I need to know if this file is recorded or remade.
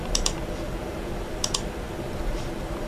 remade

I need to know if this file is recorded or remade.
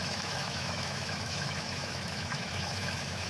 remade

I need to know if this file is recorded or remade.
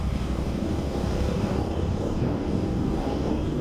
remade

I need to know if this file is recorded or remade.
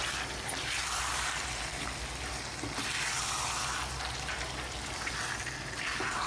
recorded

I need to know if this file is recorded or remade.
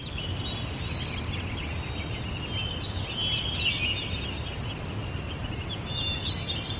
recorded